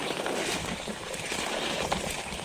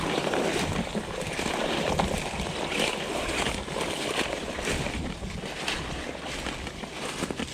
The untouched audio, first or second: second